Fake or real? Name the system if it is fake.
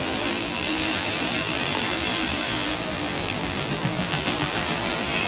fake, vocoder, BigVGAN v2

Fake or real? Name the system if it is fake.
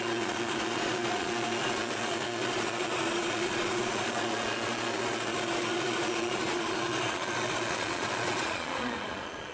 fake, vocoder, Vocos